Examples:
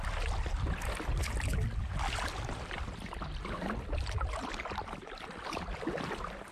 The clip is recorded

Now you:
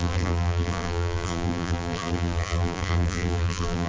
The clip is remade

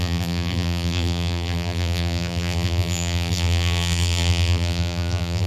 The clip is remade